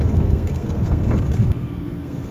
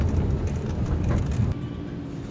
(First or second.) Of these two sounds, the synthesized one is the first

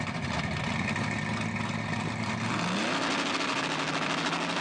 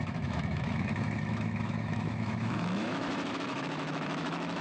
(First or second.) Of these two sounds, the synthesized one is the second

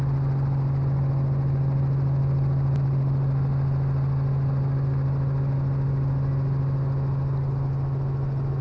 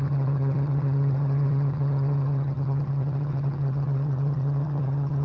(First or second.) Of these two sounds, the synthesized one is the second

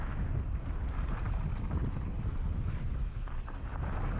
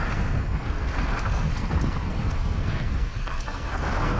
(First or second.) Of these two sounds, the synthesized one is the second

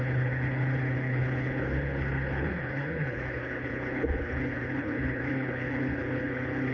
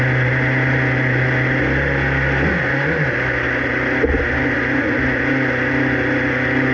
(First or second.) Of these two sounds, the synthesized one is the first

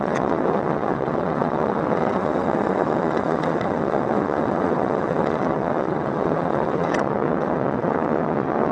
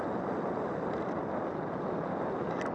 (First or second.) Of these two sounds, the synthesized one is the first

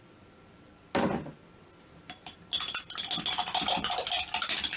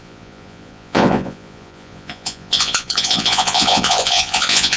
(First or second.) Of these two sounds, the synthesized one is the second